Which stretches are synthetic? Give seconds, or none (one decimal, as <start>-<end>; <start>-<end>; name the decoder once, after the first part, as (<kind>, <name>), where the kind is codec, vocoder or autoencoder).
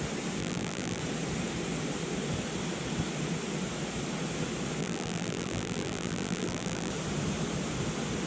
0.4-1.0 (vocoder, BigVGAN v2); 4.8-6.9